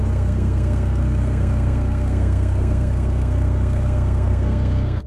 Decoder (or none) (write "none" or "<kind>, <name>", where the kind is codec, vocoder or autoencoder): codec, SNAC